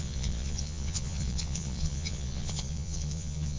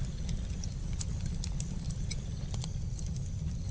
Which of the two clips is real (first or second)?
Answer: second